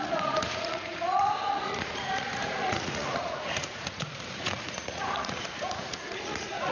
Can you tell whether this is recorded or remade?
remade